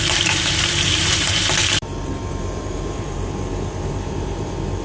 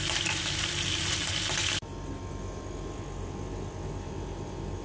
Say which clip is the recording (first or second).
second